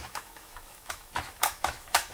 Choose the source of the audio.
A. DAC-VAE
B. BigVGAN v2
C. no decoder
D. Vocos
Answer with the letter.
A